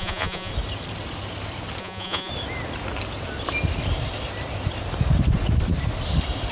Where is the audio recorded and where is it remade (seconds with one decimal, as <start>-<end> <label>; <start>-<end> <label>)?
0.0-0.5 remade; 0.5-1.8 recorded; 1.8-2.3 remade; 2.3-6.5 recorded